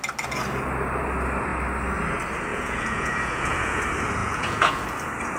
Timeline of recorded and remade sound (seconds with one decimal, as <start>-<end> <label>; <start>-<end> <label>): 0.0-2.5 recorded; 2.5-3.8 remade; 3.8-4.2 recorded; 4.2-4.8 remade; 4.8-5.4 recorded